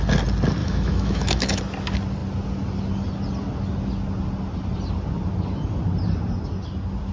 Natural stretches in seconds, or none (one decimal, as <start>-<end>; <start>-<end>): 0.0-0.6; 1.6-7.1